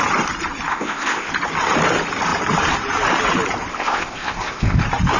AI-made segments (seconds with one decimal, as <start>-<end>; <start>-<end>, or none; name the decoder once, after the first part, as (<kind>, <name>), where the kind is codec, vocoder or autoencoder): 0.7-1.3 (codec, ZipCodec); 3.7-4.8